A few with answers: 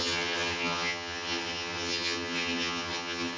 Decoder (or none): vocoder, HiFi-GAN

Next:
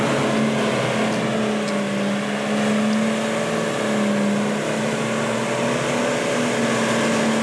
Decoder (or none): none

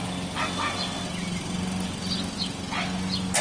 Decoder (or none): none